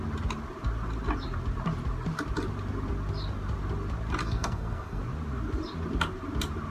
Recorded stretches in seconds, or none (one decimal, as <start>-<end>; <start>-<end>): 0.0-4.2; 5.0-6.7